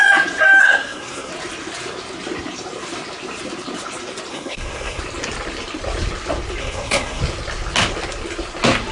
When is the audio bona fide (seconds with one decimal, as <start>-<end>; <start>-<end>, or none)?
0.0-0.6; 1.3-4.3; 5.0-6.6; 7.2-8.9